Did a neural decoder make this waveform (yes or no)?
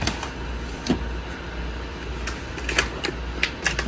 no